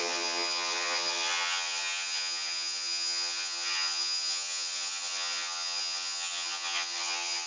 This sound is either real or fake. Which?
fake